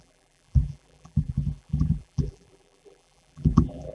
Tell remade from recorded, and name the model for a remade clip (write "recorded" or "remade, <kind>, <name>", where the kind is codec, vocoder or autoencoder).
remade, vocoder, BigVGAN v2